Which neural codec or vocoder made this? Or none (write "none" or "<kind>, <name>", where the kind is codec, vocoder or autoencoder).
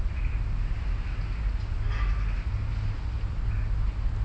none